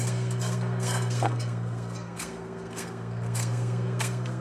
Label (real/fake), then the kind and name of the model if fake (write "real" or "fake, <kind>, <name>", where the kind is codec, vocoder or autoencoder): fake, codec, SNAC